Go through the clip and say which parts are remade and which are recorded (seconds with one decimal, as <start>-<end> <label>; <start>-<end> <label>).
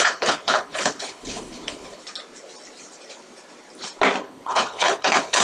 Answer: 0.0-2.0 remade; 2.0-4.2 recorded; 4.2-5.4 remade